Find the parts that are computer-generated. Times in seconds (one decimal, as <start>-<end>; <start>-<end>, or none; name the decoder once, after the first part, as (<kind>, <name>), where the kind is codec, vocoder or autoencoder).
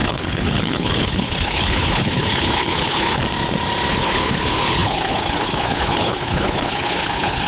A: 0.0-3.2 (codec, HILCodec); 3.9-7.5